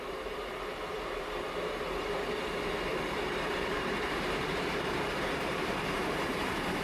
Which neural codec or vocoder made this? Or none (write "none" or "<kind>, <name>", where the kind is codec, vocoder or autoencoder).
vocoder, BigVGAN v2